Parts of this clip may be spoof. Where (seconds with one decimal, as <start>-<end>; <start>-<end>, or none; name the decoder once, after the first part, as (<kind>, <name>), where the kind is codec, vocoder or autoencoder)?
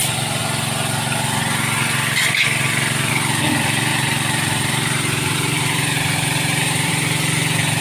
3.9-6.9 (vocoder, BigVGAN v2)